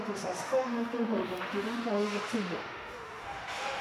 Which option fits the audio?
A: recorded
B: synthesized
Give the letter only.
B